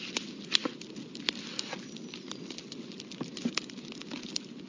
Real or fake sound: real